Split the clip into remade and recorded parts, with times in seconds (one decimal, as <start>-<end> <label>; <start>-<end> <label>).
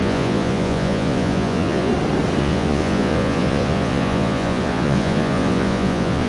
0.0-1.9 remade; 1.9-2.4 recorded; 2.4-6.3 remade